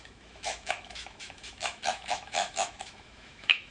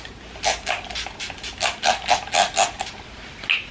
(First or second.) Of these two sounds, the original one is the second